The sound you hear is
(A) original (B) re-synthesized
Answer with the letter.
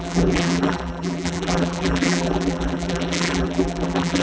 B